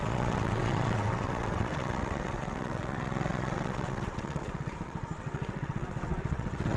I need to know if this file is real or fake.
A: fake